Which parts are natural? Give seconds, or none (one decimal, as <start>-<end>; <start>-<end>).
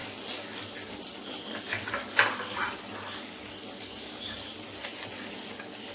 0.0-5.9